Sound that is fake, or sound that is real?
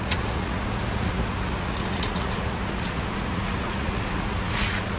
fake